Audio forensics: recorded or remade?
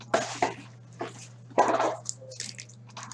recorded